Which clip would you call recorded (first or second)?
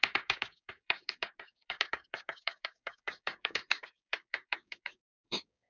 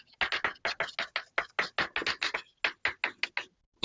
second